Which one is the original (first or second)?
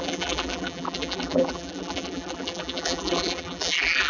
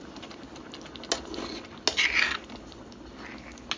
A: second